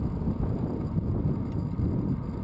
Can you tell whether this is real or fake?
real